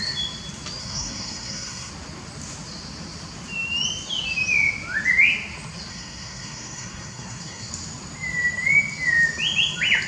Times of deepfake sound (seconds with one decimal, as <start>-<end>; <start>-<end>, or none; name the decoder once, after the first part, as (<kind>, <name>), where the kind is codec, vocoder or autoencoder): 0.8-1.9 (codec, SNAC); 5.9-7.7